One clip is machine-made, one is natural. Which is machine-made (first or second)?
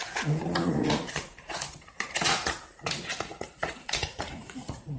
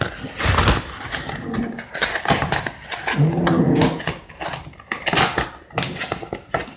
first